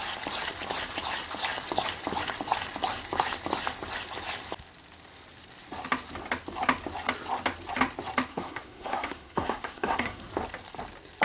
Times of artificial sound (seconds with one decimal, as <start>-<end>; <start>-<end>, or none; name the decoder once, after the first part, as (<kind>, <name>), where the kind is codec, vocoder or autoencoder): 8.3-10.3 (codec, SNAC)